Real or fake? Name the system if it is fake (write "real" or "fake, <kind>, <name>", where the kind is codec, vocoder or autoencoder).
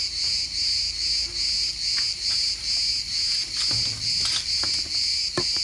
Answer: real